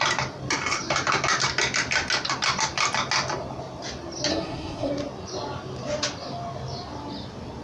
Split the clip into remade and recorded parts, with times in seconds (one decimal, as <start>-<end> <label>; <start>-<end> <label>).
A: 0.0-4.3 recorded; 4.3-4.9 remade; 4.9-7.6 recorded